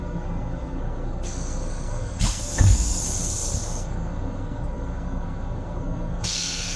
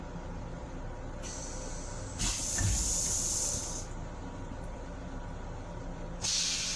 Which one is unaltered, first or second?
second